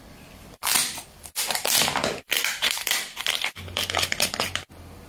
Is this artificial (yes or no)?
yes